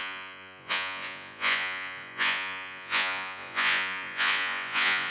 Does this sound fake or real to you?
fake